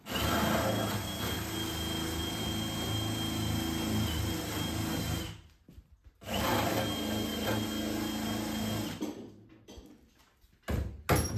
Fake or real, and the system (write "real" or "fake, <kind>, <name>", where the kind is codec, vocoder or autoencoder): real